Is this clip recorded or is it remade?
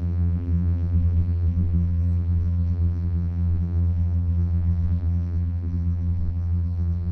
remade